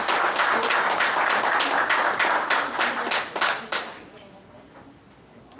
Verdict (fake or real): real